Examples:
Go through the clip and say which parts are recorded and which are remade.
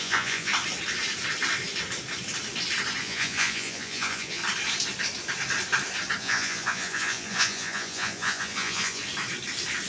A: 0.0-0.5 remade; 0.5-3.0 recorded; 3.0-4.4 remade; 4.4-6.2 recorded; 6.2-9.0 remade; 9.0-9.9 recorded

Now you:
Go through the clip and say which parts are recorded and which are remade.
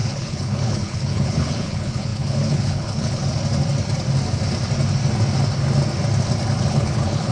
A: 0.0-3.2 remade; 3.2-6.7 recorded; 6.7-7.3 remade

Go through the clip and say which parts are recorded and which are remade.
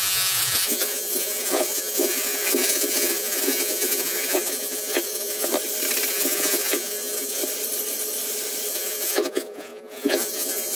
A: 0.0-5.5 remade; 5.5-6.1 recorded; 6.1-7.4 remade; 7.4-8.7 recorded; 8.7-10.8 remade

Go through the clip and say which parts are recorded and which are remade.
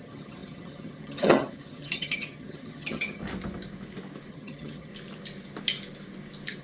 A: 0.0-3.2 remade; 3.2-4.3 recorded; 4.3-4.9 remade; 4.9-6.6 recorded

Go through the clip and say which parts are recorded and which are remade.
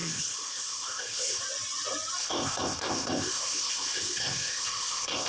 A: 0.0-1.4 remade; 1.4-2.2 recorded; 2.2-5.3 remade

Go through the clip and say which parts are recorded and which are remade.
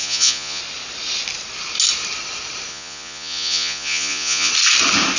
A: 0.0-0.6 remade; 0.6-2.7 recorded; 2.7-4.5 remade; 4.5-5.2 recorded